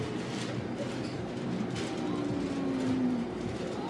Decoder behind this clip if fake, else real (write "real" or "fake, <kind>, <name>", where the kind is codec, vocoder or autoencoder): real